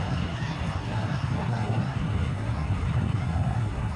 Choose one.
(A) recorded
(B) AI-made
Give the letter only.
B